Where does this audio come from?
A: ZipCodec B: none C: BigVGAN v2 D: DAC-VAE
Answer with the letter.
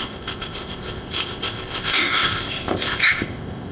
A